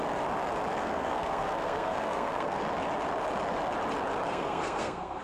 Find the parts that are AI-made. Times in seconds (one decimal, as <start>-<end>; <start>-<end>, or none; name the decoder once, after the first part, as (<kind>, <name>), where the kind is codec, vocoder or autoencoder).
0.8-2.6 (codec, SNAC); 4.3-5.2